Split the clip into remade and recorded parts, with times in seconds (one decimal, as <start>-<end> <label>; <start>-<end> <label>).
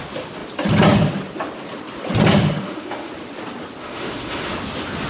0.0-2.6 recorded; 2.6-3.1 remade; 3.1-3.8 recorded; 3.8-4.5 remade; 4.5-5.1 recorded